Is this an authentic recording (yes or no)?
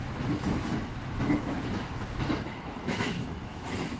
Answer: no